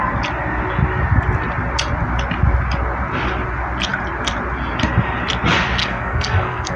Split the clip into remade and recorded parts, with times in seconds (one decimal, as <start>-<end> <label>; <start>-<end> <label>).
0.0-5.8 recorded; 5.8-6.8 remade